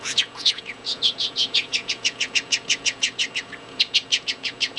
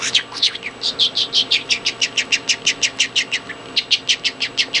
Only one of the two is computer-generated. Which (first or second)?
first